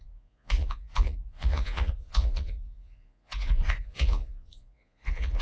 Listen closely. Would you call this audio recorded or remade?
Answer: remade